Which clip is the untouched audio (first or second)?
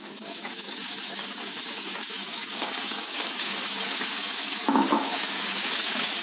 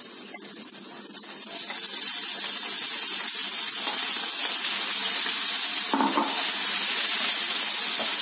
second